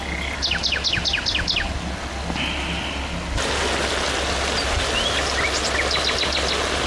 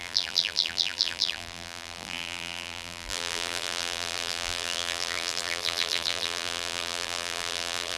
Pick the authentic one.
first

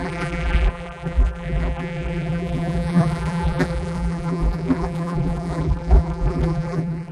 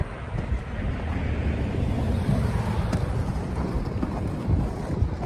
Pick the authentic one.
second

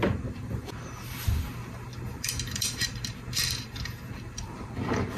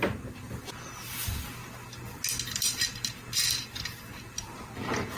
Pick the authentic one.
second